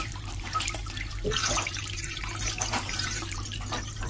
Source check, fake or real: fake